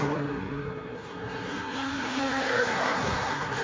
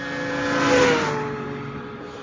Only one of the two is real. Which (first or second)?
second